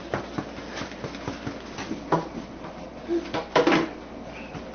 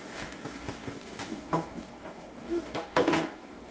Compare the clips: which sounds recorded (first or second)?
first